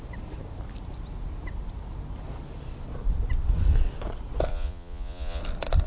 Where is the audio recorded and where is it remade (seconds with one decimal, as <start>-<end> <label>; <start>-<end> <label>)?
0.0-4.5 recorded; 4.5-5.4 remade; 5.4-5.9 recorded